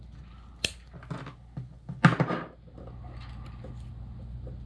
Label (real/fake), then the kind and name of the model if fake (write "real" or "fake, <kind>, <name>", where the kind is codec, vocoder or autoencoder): real